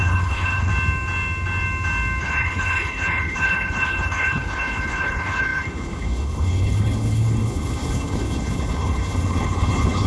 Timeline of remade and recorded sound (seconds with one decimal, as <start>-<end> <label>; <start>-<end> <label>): 0.0-0.7 remade; 0.7-2.2 recorded; 2.2-10.1 remade